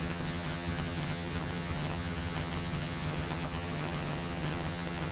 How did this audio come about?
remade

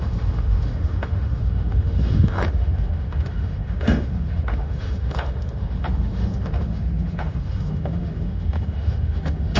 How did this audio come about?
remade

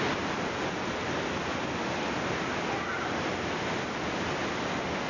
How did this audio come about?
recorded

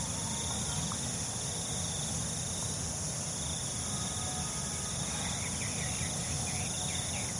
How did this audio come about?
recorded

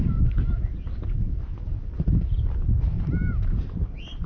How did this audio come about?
remade